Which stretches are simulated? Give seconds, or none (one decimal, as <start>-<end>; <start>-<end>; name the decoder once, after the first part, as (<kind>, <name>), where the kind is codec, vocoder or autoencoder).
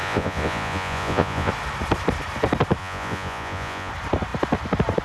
0.0-1.5 (vocoder, Vocos); 2.8-3.9